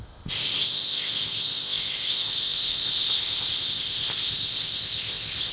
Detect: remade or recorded remade